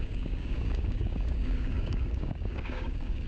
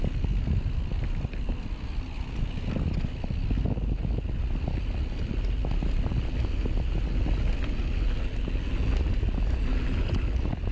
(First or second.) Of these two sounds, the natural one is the second